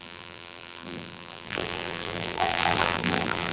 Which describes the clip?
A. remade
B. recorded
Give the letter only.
A